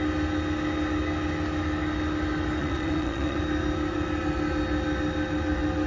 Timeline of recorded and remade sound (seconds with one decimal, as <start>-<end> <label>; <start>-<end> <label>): 0.0-2.6 recorded; 2.6-3.4 remade; 3.4-5.9 recorded